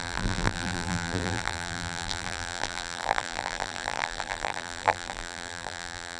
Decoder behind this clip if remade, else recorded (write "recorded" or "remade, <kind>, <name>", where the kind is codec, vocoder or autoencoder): remade, vocoder, BigVGAN v2